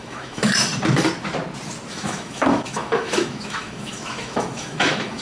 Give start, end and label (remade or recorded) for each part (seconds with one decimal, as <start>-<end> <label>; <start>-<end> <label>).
0.0-0.7 remade; 0.7-1.9 recorded; 1.9-5.2 remade